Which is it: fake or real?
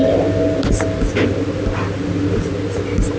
real